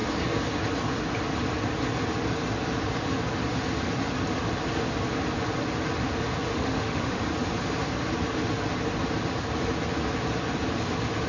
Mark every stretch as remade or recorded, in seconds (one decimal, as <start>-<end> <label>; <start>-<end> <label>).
0.0-6.5 recorded; 6.5-7.2 remade; 7.2-11.3 recorded